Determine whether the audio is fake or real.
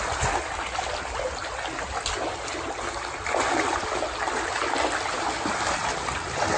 real